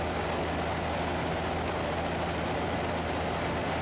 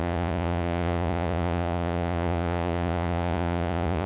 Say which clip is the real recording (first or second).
first